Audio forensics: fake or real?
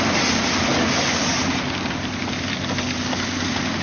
real